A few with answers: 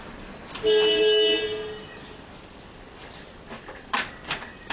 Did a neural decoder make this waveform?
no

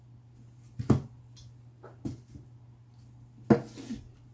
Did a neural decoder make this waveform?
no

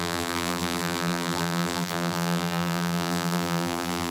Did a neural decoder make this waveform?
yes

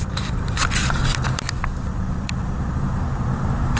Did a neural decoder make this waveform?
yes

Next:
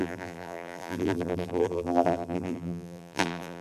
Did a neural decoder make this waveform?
yes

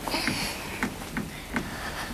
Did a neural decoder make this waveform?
no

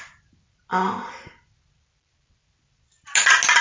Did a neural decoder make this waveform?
no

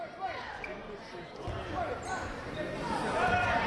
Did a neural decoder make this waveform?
yes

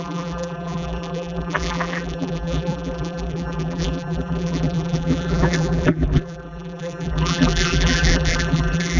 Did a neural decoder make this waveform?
yes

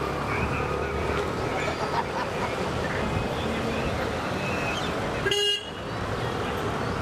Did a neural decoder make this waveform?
no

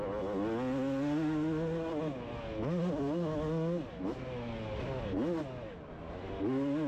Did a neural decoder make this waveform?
no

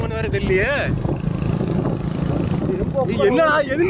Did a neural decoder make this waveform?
no